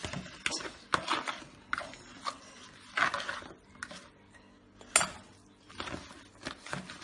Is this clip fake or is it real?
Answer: real